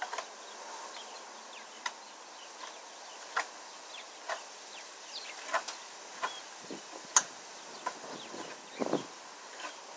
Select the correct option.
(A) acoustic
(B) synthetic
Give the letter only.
A